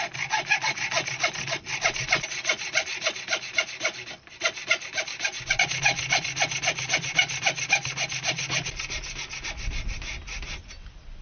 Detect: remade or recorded recorded